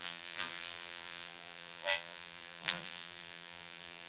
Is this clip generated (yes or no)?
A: yes